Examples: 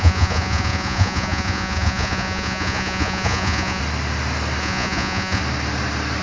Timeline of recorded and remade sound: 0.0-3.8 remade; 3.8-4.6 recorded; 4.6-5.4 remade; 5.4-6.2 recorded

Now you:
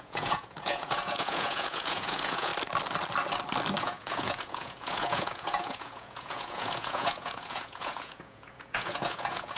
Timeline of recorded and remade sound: 0.0-2.5 remade; 2.5-3.8 recorded; 3.8-9.6 remade

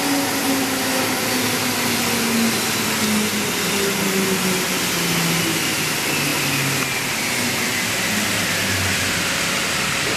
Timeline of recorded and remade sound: 0.0-10.2 recorded